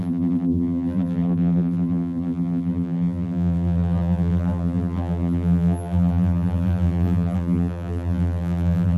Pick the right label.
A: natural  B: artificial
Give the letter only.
B